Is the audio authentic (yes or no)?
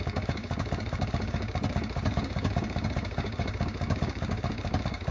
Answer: no